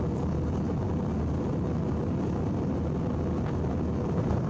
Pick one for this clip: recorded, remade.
recorded